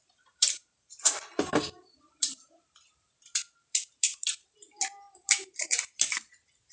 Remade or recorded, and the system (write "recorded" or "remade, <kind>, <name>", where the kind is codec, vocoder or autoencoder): remade, vocoder, BigVGAN v2